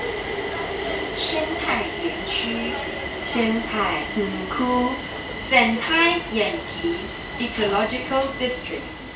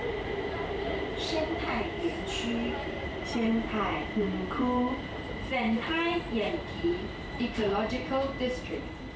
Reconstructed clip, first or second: second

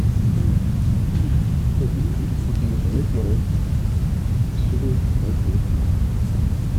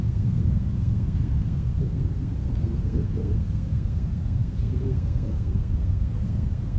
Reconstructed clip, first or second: second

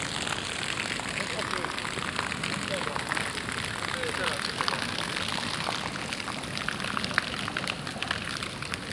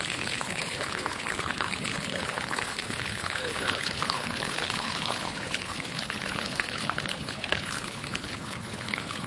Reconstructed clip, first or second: second